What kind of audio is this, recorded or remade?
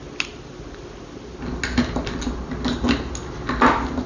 recorded